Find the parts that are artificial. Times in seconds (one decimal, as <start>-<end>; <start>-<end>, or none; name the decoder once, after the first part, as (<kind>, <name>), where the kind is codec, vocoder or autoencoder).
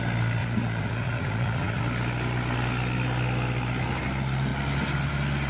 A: 0.4-1.8 (vocoder, Vocos)